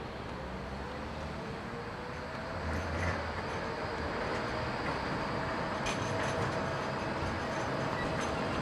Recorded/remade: recorded